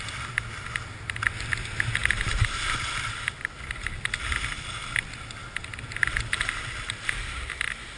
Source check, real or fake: real